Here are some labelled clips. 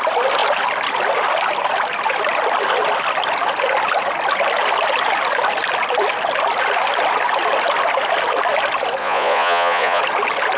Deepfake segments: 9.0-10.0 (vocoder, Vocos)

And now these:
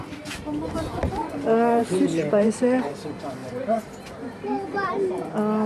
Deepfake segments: 1.8-2.9 (vocoder, BigVGAN v2); 3.4-4.9

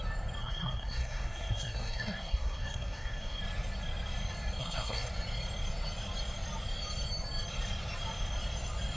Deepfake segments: 0.4-3.4 (codec, SNAC); 4.6-5.1

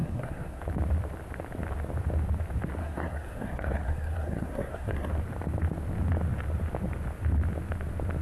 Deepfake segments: 0.0-0.6 (codec, SNAC); 2.8-5.1